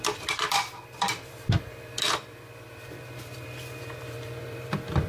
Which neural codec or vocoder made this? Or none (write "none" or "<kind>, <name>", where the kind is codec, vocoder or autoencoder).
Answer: vocoder, BigVGAN v2